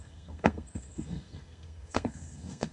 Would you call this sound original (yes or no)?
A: no